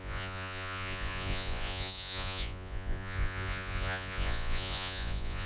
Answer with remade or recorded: remade